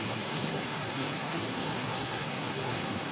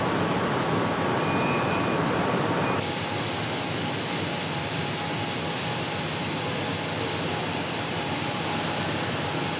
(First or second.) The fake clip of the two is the first